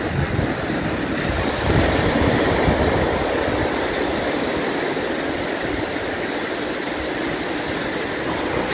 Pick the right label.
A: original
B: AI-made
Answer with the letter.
A